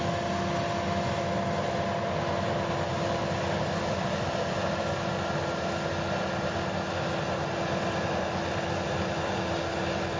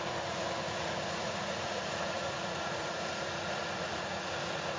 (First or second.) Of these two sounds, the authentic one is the first